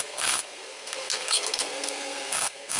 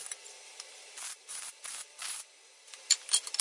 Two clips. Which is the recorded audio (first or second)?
second